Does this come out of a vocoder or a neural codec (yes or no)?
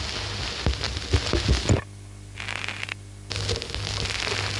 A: no